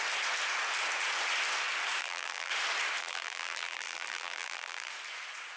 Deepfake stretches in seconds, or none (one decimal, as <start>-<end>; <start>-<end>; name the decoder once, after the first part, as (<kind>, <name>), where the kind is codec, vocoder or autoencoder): 2.0-2.5 (vocoder, BigVGAN v2); 3.0-4.9